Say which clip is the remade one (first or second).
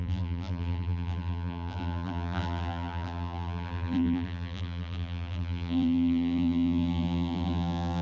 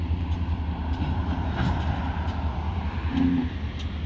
first